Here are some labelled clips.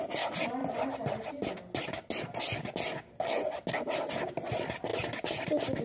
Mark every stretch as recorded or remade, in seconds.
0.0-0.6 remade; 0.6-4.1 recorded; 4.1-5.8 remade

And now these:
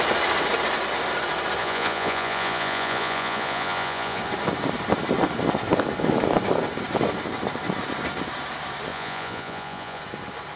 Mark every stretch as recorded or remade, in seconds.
0.0-1.6 recorded; 1.6-4.2 remade; 4.2-8.9 recorded; 8.9-10.0 remade; 10.0-10.6 recorded

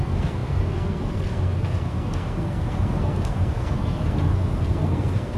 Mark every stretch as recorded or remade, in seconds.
0.0-5.4 remade

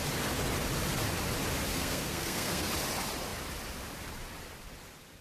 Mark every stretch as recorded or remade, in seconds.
0.0-1.7 recorded; 1.7-2.7 remade; 2.7-5.2 recorded

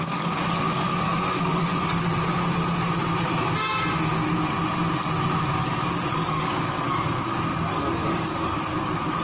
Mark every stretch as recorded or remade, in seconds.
0.0-1.7 remade; 1.7-5.6 recorded; 5.6-9.2 remade